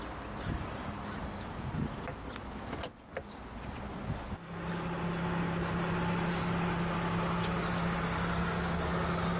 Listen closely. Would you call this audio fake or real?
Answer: real